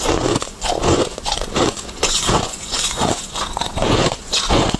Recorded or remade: remade